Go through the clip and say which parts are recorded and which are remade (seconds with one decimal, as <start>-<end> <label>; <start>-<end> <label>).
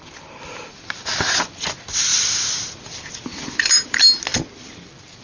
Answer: 0.0-5.2 recorded